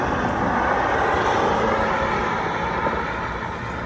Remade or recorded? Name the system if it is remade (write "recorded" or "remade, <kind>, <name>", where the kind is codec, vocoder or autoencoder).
recorded